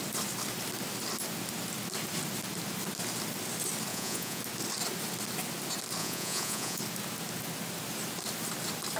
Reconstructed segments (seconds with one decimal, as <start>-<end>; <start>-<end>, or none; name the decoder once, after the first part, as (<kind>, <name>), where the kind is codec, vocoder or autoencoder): 3.9-4.4 (vocoder, Vocos); 6.0-6.8